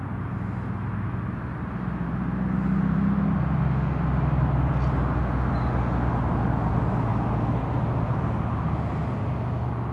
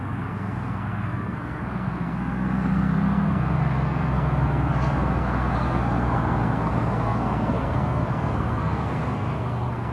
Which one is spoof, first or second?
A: second